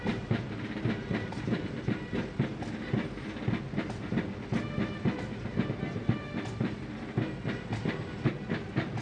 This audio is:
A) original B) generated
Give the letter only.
A